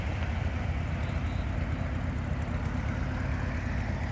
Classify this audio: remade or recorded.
recorded